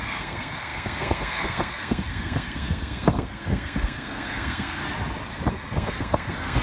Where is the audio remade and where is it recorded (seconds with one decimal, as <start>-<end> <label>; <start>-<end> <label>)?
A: 0.0-4.8 remade; 4.8-5.5 recorded; 5.5-6.6 remade